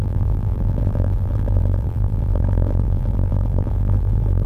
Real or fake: fake